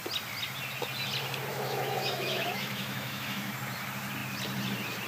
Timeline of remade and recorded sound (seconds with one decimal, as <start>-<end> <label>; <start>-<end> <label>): 0.0-1.5 recorded; 1.5-3.5 remade; 3.5-5.1 recorded